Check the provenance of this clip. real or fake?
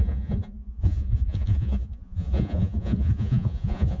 fake